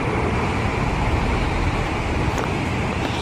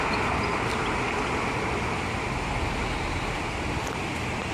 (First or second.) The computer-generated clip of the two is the first